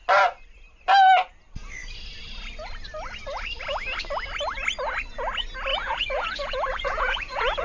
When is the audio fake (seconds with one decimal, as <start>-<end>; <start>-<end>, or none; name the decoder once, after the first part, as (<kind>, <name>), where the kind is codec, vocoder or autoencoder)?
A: 5.7-7.6 (vocoder, Vocos)